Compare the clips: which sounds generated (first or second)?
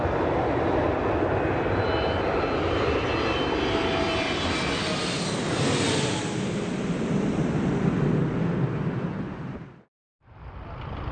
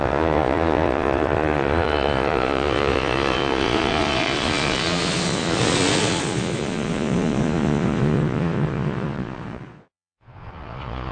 second